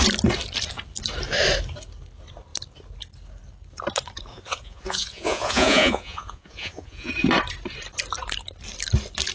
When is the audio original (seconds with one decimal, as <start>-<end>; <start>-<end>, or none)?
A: 0.0-4.3; 7.1-9.3